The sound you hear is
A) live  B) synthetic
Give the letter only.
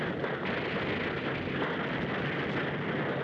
A